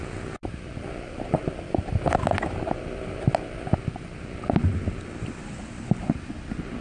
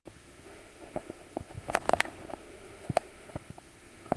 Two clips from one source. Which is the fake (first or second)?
second